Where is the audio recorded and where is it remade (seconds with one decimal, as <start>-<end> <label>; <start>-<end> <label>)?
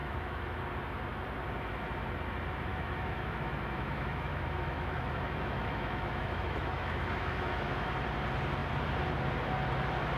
0.0-0.6 remade; 0.6-2.7 recorded; 2.7-7.9 remade; 7.9-10.2 recorded